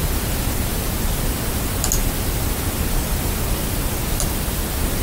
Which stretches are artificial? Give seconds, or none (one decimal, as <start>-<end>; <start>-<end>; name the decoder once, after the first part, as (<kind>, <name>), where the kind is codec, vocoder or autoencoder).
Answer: none